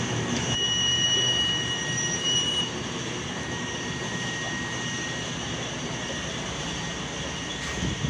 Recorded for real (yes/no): no